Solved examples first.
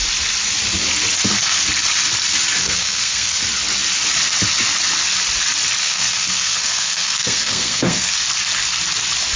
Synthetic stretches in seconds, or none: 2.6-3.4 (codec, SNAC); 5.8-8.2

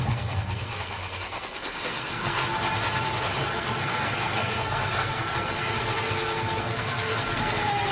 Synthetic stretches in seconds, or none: 0.0-2.4 (codec, SNAC); 3.4-7.9

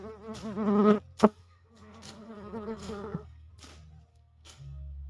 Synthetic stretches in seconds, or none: 1.2-3.5 (codec, SNAC); 4.1-5.1

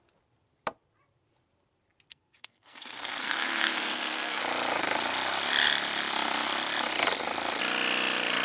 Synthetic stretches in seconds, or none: 2.1-4.4 (codec, SNAC)